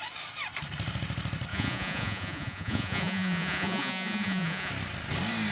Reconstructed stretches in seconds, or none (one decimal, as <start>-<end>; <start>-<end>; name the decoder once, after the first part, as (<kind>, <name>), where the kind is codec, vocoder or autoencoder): 1.5-4.7 (vocoder, Vocos)